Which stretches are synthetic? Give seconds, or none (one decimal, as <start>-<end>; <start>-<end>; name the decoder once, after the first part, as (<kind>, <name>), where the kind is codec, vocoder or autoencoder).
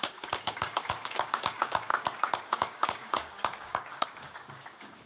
0.0-5.1 (codec, DAC)